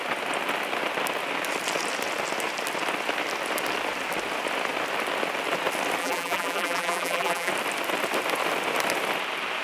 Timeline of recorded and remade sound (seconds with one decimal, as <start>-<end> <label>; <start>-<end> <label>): 0.0-6.0 recorded; 6.0-7.5 remade; 7.5-9.6 recorded